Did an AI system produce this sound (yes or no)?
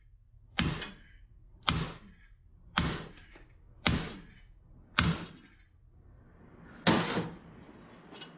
no